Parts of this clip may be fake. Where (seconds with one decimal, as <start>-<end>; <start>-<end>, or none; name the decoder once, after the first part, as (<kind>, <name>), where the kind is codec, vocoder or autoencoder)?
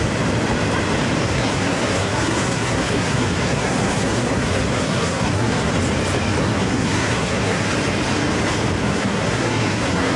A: 1.2-5.7 (codec, SNAC); 6.4-7.7; 8.8-10.2